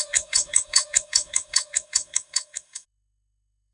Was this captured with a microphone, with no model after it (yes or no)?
no